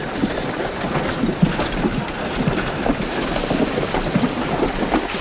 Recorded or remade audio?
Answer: remade